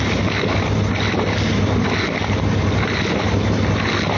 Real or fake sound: real